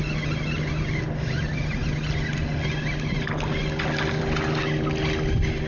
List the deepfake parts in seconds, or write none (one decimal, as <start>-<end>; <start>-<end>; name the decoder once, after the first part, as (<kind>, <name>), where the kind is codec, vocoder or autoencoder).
none